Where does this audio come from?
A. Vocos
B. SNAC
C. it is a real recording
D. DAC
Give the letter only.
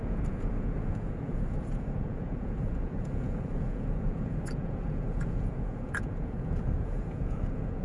A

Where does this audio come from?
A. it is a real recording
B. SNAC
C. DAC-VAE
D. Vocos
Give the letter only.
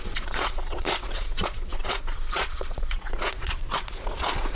D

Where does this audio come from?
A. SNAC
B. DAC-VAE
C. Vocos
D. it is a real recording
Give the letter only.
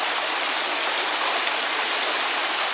D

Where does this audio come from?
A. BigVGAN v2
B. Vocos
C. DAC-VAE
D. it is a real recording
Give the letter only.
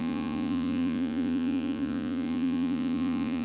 B